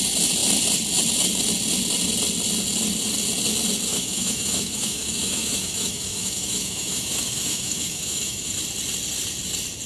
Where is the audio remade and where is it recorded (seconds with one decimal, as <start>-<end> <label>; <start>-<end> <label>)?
0.0-3.9 recorded; 3.9-8.5 remade; 8.5-9.9 recorded